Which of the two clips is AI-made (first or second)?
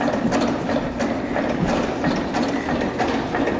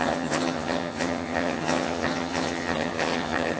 second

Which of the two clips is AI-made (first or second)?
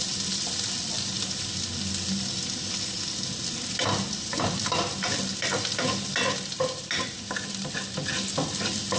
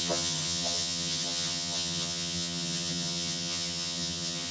second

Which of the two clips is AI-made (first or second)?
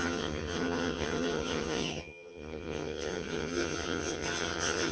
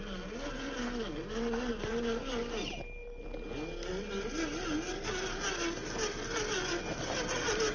first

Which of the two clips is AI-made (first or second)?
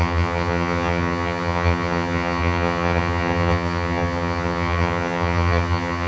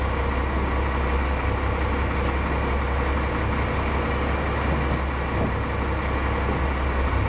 first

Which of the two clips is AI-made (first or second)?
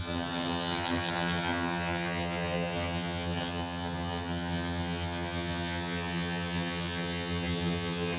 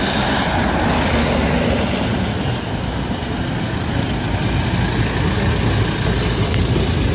first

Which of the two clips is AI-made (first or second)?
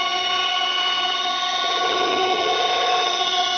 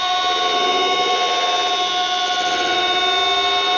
first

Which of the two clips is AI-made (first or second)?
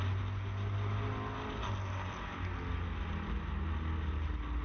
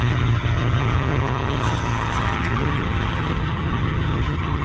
second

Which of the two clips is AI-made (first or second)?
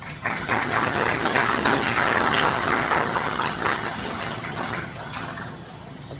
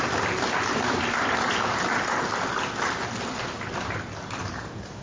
first